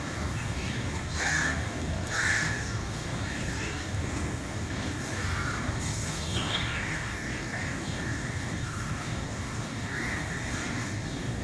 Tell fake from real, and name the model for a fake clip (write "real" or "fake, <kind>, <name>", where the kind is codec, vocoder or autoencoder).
fake, codec, DAC